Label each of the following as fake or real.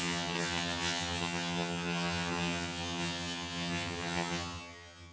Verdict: fake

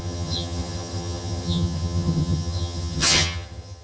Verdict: fake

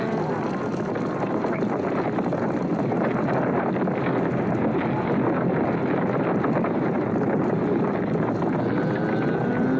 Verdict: real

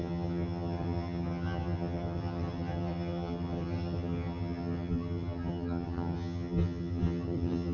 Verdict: fake